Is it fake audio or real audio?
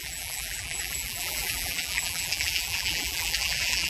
fake